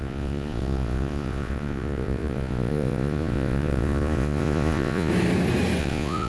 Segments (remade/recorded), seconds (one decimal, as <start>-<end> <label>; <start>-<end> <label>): 0.0-5.1 remade; 5.1-5.8 recorded; 5.8-6.3 remade